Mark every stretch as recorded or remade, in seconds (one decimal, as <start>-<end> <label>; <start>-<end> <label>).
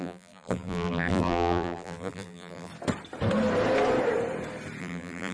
0.0-2.7 remade; 2.7-4.8 recorded; 4.8-5.3 remade